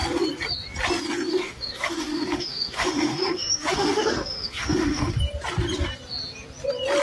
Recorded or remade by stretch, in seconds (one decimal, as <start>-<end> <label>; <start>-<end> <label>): 0.0-1.3 recorded; 1.3-5.2 remade; 5.2-7.0 recorded

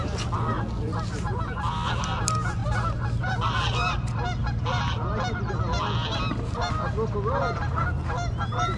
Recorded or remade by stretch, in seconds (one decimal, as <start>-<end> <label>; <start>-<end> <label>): 0.0-8.8 recorded

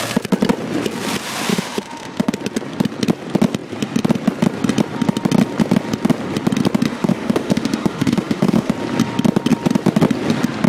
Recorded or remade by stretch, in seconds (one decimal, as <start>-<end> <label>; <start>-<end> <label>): 0.0-1.5 recorded; 1.5-2.3 remade; 2.3-6.9 recorded; 6.9-8.7 remade; 8.7-10.7 recorded

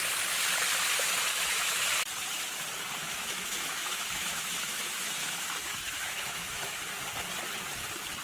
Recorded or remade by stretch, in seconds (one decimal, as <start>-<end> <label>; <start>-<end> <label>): 0.0-1.3 recorded; 1.3-1.8 remade; 1.8-3.0 recorded; 3.0-6.8 remade; 6.8-8.2 recorded

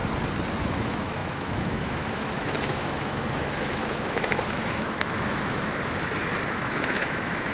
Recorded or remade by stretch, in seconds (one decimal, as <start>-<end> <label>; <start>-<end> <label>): 0.0-0.7 recorded; 0.7-5.7 remade; 5.7-6.5 recorded; 6.5-7.5 remade